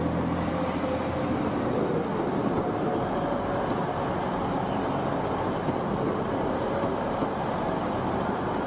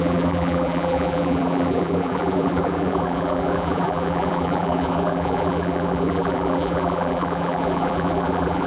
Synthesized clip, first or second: second